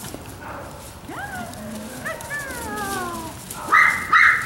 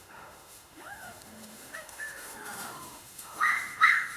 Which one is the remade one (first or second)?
second